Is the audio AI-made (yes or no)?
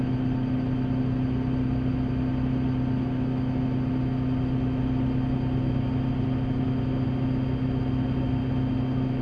no